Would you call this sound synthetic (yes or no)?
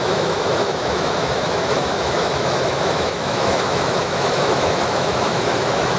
yes